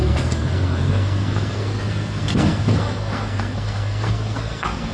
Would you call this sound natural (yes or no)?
no